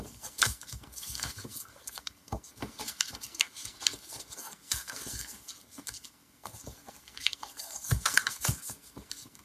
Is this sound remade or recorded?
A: remade